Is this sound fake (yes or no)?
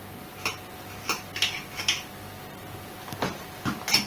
no